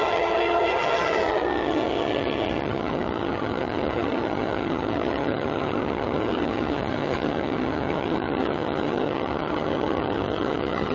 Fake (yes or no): yes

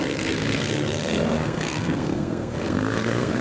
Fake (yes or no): yes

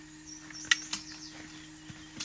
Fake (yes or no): no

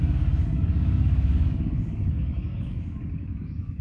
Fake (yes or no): yes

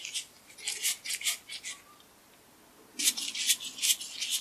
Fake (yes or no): no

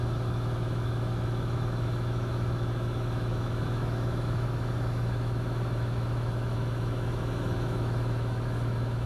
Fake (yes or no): yes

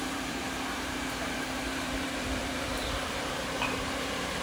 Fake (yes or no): yes